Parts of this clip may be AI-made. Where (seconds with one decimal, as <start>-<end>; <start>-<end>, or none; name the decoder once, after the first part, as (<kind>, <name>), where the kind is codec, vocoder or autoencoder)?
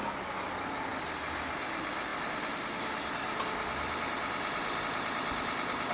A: none